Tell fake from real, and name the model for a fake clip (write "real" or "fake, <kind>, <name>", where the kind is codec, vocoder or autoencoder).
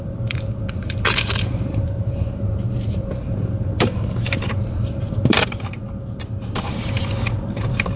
fake, vocoder, BigVGAN v2